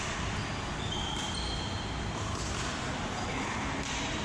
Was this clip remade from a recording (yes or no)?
no